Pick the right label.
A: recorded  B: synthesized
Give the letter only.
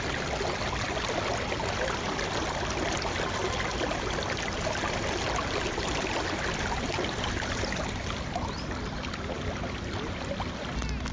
A